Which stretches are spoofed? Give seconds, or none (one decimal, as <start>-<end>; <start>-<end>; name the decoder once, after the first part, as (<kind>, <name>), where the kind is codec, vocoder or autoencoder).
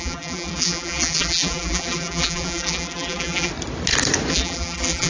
0.0-3.5 (vocoder, BigVGAN v2); 4.3-5.1